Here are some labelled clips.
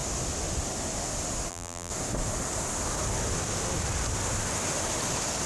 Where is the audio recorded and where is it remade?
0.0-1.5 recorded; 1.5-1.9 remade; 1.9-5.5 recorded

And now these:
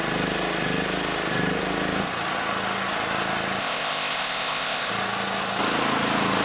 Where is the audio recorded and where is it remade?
0.0-3.6 recorded; 3.6-4.9 remade; 4.9-6.4 recorded